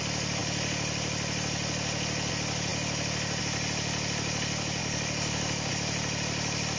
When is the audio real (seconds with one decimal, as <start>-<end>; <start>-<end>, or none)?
0.0-4.8; 5.7-6.8